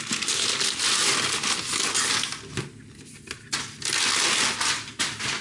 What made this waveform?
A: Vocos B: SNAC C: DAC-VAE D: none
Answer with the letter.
D